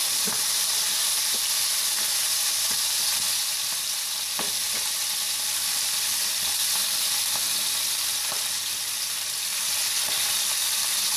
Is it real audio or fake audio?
fake